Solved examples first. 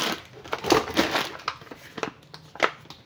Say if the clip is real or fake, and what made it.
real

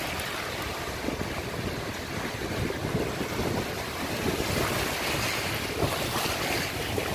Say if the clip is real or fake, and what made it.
real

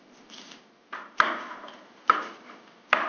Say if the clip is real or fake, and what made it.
fake, vocoder, BigVGAN v2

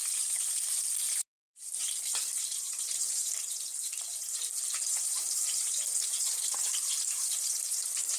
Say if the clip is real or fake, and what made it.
fake, vocoder, BigVGAN v2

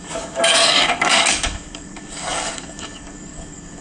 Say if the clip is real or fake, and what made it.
fake, codec, DAC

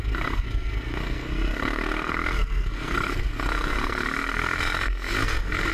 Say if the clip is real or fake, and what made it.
fake, codec, SNAC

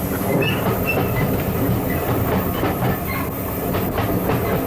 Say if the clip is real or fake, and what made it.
real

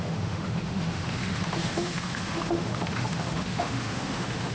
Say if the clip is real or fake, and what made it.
fake, autoencoder, DAC-VAE